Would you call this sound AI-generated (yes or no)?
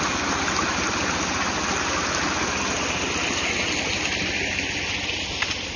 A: no